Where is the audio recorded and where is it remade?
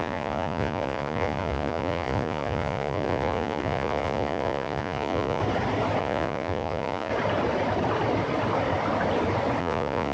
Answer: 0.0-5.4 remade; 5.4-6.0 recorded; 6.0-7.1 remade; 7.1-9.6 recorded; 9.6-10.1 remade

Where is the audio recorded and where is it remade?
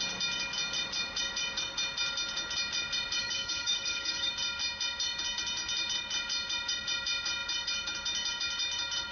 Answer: 0.0-3.2 recorded; 3.2-4.3 remade; 4.3-9.1 recorded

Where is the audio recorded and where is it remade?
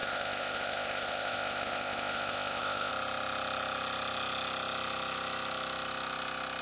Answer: 0.0-2.9 remade; 2.9-6.6 recorded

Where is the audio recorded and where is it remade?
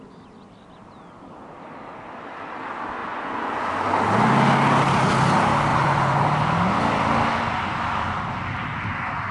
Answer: 0.0-3.0 recorded; 3.0-3.7 remade; 3.7-5.7 recorded; 5.7-6.2 remade; 6.2-9.3 recorded